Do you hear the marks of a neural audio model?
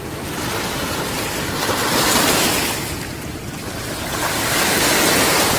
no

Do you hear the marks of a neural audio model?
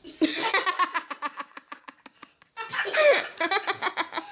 no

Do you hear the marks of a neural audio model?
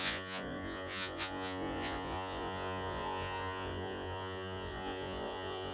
yes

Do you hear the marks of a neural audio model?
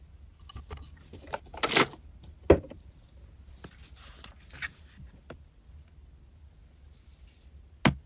no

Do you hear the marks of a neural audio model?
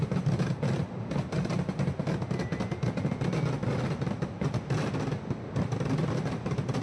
no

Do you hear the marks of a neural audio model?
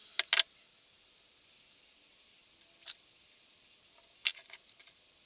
no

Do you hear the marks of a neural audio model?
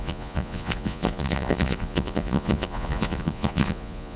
yes